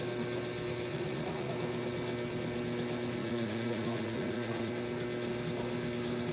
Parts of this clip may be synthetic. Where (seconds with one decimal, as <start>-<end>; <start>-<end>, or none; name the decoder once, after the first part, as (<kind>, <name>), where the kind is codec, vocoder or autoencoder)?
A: 0.9-1.5 (vocoder, Vocos); 3.2-4.7